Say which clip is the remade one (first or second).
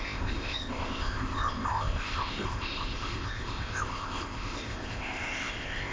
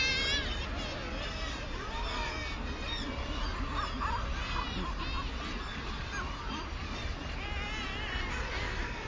first